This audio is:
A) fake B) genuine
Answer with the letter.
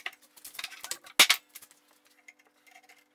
B